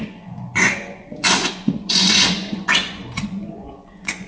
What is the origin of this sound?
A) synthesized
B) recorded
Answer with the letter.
A